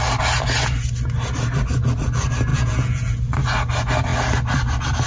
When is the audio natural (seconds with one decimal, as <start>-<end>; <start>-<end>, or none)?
0.0-2.5; 3.2-5.1